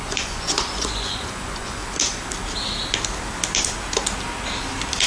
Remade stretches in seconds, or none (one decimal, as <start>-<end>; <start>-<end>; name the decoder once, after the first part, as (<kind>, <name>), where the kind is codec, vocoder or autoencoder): 0.0-1.8 (vocoder, Vocos)